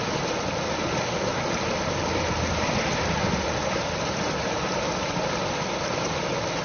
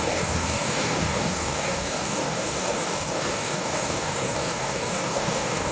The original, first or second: first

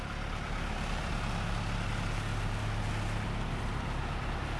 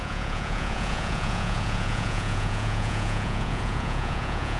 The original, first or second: first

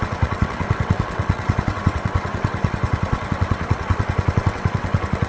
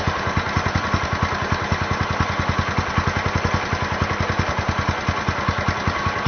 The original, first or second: second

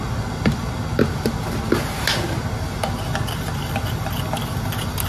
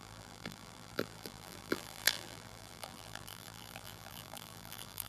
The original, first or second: first